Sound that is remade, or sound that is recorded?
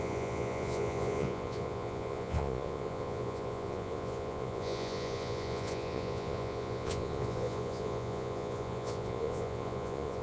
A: remade